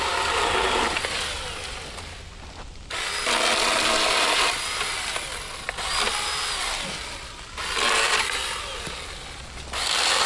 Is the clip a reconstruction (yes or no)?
no